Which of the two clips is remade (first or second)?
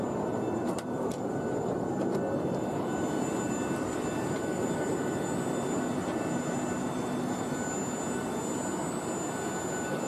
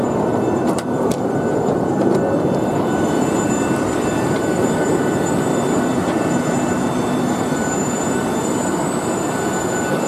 second